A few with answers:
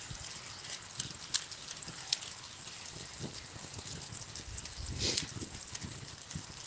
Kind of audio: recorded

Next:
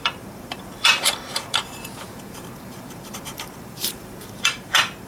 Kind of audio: remade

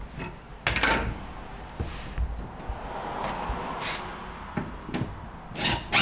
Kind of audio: recorded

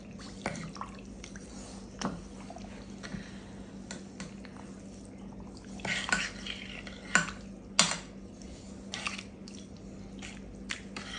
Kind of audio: recorded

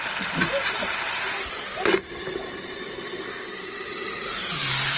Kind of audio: remade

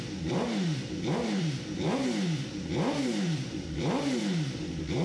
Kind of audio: remade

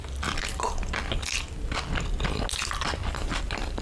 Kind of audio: recorded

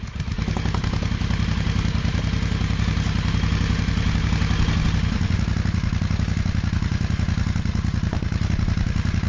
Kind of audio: recorded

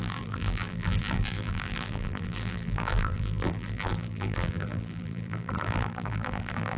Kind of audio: remade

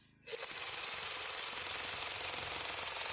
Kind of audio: recorded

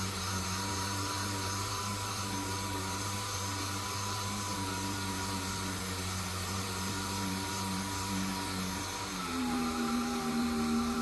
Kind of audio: remade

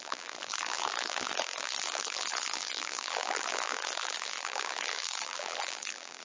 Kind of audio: remade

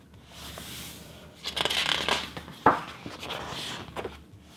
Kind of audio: recorded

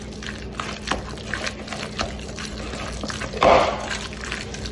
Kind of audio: remade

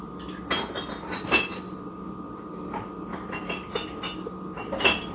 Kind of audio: recorded